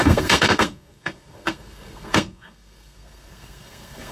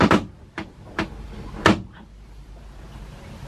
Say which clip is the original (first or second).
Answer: second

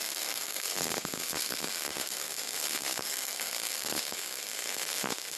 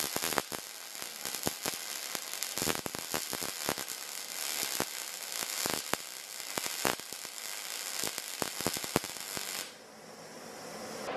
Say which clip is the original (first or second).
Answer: second